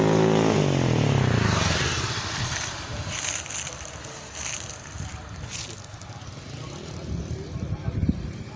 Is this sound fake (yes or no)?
no